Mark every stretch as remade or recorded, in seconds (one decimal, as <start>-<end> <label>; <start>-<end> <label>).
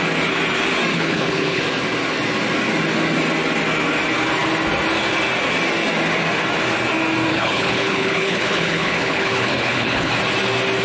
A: 0.0-0.9 recorded; 0.9-1.6 remade; 1.6-7.3 recorded; 7.3-10.1 remade; 10.1-10.8 recorded